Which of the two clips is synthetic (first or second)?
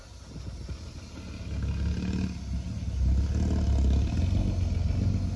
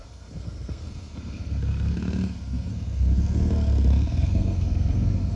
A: second